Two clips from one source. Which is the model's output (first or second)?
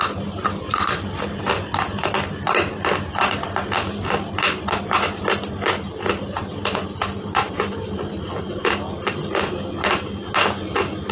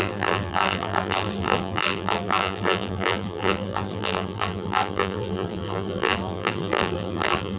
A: second